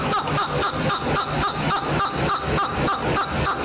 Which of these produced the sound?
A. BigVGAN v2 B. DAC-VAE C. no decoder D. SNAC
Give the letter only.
C